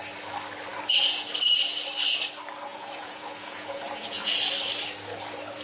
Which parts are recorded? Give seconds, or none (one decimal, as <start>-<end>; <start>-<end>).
0.0-2.7; 4.3-5.6